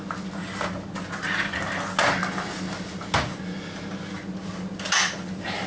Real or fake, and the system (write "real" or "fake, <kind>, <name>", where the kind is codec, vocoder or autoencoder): real